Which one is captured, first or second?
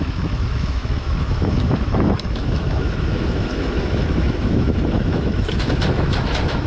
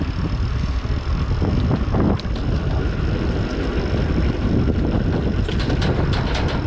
second